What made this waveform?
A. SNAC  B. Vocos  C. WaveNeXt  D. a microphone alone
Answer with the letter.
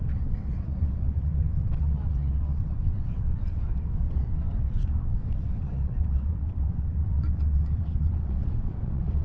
C